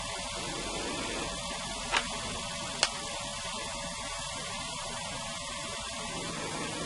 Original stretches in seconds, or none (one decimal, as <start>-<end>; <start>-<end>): 0.0-3.3